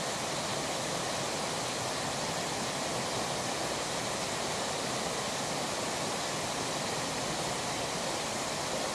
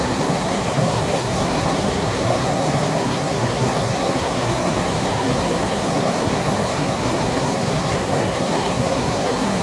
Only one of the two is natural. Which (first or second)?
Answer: first